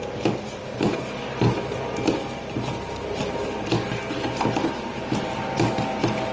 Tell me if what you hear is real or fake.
real